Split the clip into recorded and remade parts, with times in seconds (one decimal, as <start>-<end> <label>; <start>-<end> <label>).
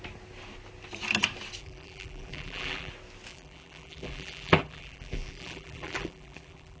0.0-1.6 recorded; 1.6-2.9 remade; 2.9-3.3 recorded; 3.3-6.8 remade